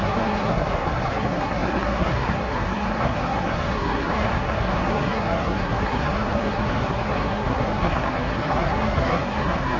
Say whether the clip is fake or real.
fake